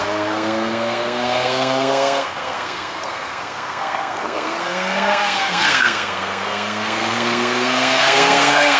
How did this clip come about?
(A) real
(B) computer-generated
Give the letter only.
B